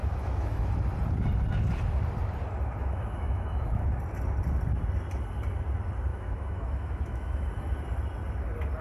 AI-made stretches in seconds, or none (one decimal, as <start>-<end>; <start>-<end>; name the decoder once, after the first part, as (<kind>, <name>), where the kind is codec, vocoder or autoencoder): 0.0-0.7 (autoencoder, DAC-VAE); 2.8-4.0; 6.1-7.5